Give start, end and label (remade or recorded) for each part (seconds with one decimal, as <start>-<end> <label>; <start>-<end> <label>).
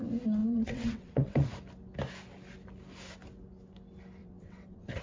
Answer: 0.0-0.4 recorded; 0.4-1.5 remade; 1.5-4.2 recorded; 4.2-5.0 remade